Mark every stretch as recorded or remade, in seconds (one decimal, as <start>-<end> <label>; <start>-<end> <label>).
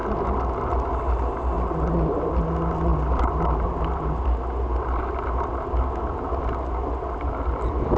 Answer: 0.0-8.0 recorded